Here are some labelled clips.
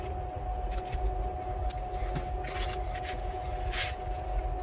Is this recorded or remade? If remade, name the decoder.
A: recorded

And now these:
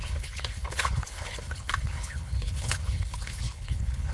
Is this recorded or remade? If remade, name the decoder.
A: remade, codec, HILCodec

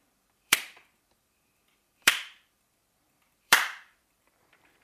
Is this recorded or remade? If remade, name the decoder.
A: remade, vocoder, BigVGAN v2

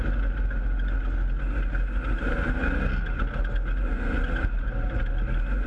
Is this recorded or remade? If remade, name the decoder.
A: recorded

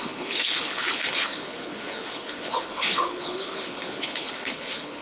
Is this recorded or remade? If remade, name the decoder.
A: remade, codec, HILCodec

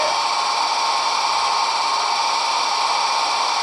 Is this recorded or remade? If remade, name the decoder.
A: recorded